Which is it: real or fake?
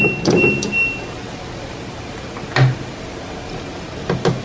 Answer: real